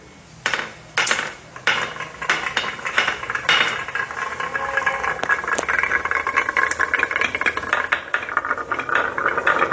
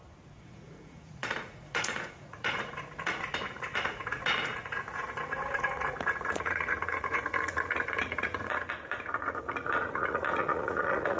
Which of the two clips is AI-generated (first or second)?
second